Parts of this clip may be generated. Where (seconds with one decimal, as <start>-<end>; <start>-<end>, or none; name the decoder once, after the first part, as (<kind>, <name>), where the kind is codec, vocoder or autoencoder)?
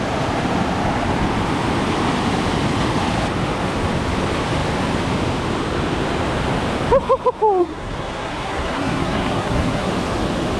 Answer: 7.6-9.9 (codec, SNAC)